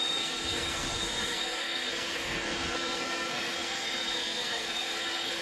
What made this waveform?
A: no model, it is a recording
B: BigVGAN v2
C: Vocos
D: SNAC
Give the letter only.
D